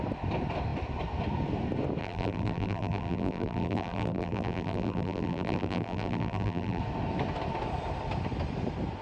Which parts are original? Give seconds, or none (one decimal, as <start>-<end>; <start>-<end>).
0.0-2.0; 6.8-9.0